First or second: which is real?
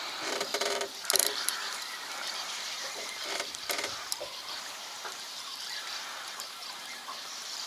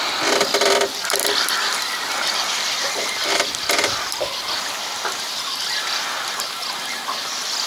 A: second